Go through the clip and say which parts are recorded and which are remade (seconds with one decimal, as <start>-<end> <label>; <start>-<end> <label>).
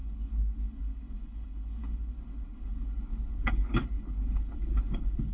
0.0-5.3 remade